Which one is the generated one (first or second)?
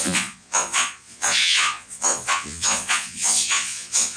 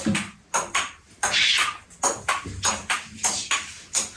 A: first